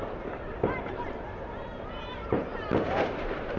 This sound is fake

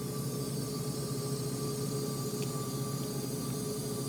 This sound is real